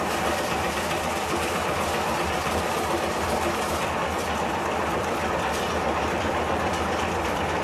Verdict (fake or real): fake